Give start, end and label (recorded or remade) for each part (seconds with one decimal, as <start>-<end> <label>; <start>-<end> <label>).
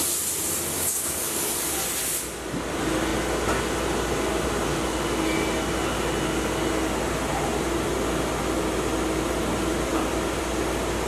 0.0-0.7 recorded; 0.7-1.8 remade; 1.8-11.1 recorded